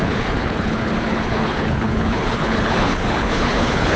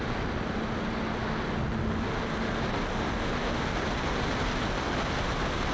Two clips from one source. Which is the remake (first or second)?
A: first